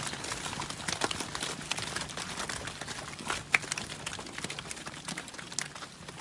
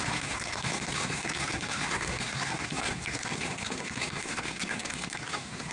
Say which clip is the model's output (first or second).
second